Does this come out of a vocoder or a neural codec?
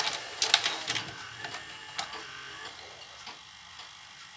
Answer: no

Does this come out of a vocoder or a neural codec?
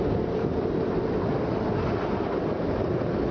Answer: no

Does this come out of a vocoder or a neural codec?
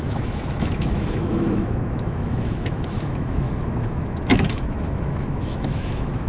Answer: yes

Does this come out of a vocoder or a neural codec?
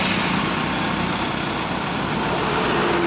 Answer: no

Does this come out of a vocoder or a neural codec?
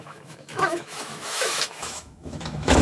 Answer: yes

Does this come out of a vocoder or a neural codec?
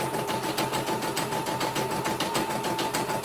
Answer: no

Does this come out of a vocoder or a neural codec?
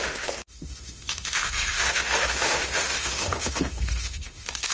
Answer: yes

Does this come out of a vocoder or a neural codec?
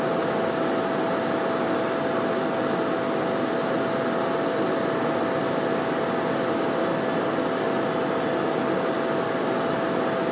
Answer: no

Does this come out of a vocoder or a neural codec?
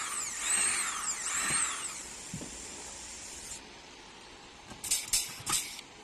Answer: no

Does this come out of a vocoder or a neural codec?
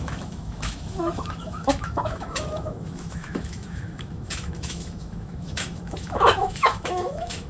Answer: yes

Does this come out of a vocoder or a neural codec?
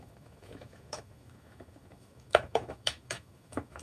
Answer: yes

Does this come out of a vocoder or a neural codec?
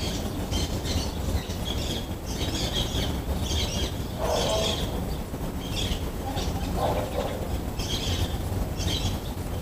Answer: no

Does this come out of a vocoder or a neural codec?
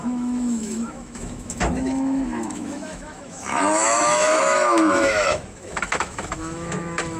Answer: yes